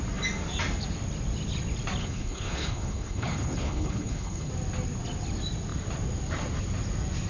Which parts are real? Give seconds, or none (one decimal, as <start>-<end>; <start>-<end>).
0.0-2.0; 4.5-7.3

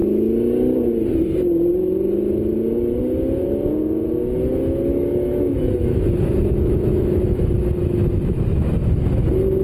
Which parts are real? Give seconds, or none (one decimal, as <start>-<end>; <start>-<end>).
0.0-4.9; 8.9-9.6

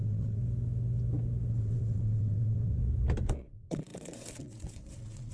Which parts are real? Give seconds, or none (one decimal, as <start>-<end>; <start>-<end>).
0.4-1.5; 2.8-3.4

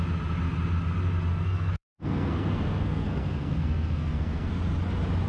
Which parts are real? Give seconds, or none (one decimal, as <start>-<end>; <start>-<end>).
0.0-1.3; 4.5-5.3

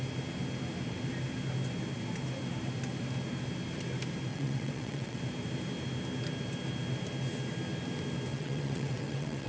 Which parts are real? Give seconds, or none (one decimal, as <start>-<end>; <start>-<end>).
0.0-4.3; 5.2-8.3

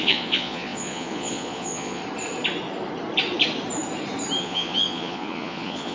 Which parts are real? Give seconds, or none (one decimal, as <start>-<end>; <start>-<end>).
2.0-4.4